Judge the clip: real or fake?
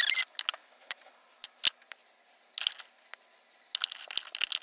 real